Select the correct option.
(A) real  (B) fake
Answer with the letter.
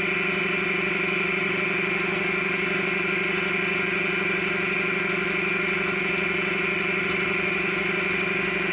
A